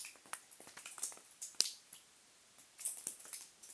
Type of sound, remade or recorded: recorded